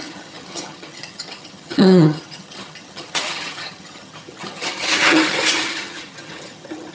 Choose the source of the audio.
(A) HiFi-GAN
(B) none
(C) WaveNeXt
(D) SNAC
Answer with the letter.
A